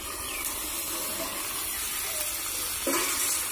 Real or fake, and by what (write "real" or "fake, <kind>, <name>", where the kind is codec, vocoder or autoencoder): real